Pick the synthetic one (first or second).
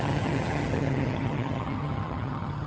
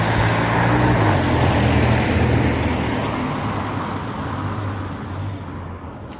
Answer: first